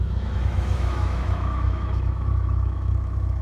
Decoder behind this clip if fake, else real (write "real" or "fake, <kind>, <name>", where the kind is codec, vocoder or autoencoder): fake, autoencoder, DAC-VAE